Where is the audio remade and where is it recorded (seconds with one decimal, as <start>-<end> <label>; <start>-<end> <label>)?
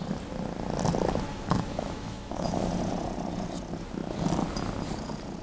0.0-1.3 recorded; 1.3-2.7 remade; 2.7-5.4 recorded